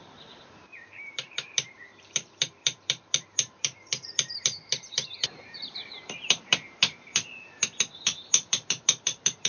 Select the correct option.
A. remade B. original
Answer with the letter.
A